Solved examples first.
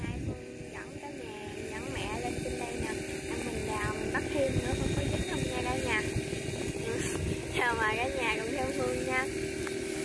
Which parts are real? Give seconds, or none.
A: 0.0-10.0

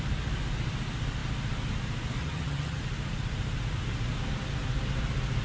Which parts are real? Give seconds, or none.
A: 0.0-2.2; 2.8-5.4

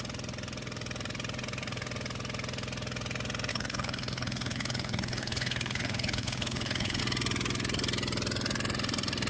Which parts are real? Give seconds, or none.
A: 0.0-3.5; 7.0-9.3